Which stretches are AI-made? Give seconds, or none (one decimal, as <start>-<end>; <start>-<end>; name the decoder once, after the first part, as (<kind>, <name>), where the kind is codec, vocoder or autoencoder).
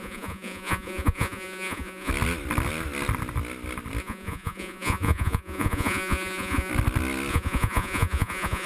0.0-2.1 (vocoder, Vocos); 4.0-6.7; 7.3-8.7